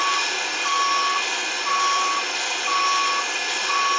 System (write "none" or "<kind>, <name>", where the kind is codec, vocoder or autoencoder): none